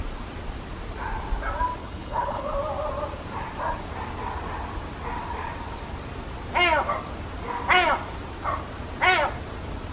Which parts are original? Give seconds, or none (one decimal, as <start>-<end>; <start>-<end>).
0.0-1.8; 2.5-9.9